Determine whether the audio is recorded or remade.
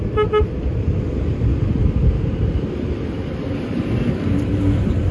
recorded